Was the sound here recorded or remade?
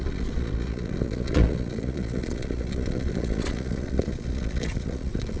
remade